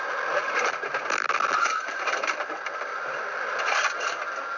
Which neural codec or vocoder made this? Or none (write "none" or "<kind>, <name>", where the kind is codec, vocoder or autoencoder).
none